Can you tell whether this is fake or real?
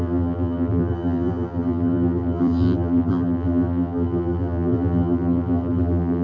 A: fake